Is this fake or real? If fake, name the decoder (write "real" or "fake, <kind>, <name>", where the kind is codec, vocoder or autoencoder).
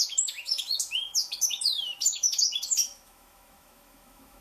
fake, autoencoder, DAC-VAE